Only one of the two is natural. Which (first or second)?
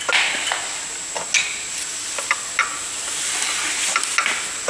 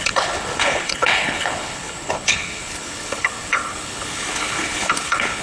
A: first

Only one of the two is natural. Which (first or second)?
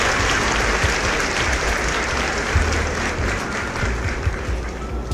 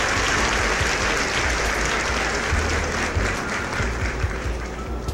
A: second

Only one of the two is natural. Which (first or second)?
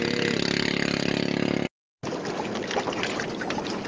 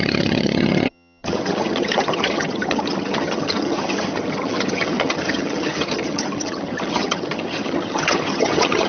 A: first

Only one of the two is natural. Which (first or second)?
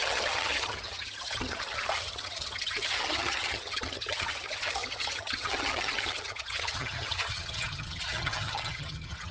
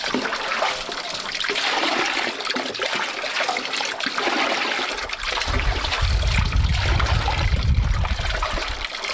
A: second